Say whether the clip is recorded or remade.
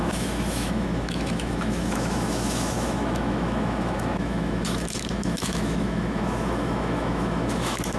remade